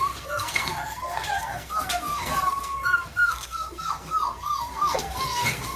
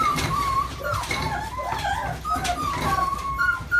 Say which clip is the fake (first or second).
first